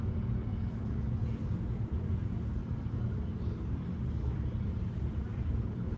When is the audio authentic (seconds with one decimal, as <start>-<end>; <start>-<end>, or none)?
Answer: 2.6-5.0